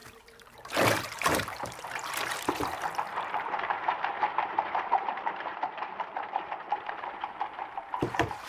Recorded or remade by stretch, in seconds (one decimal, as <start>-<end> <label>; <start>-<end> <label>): 0.0-8.5 remade